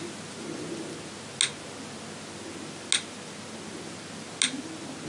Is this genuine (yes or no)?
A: yes